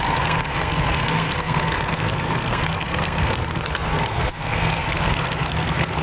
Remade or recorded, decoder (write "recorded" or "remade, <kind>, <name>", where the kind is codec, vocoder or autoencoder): remade, codec, SNAC